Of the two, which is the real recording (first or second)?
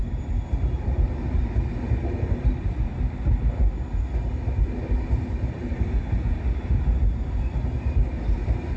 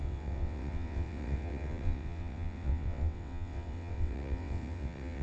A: first